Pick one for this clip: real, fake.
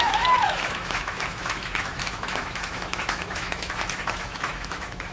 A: fake